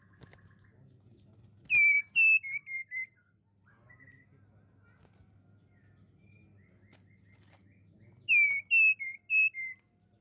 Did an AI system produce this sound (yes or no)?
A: no